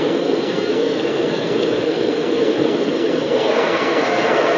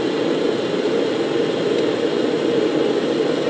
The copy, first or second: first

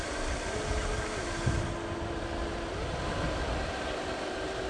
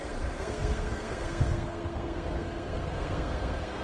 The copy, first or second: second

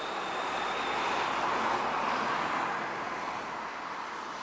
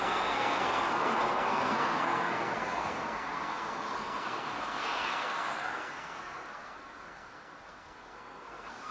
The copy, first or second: second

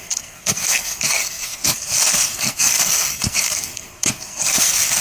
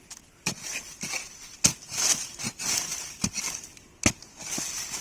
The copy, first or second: first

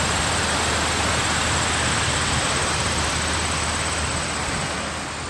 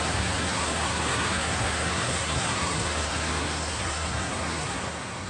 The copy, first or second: second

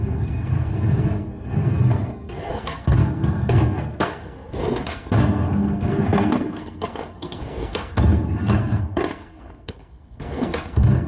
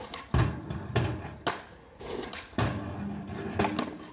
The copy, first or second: first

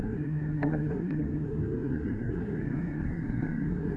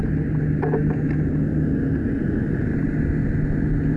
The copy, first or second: first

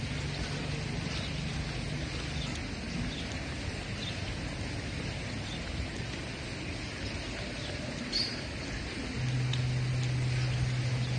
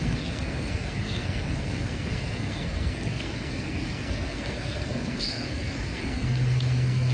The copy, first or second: second